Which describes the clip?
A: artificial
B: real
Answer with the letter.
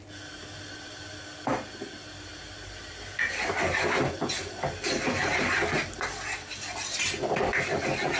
B